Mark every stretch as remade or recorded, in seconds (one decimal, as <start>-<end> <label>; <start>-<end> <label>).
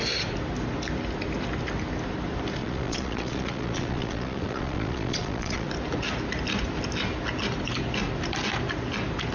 0.0-2.6 recorded; 2.6-5.7 remade; 5.7-9.3 recorded